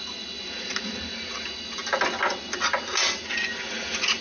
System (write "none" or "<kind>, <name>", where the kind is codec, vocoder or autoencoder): none